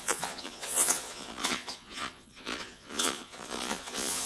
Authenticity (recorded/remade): remade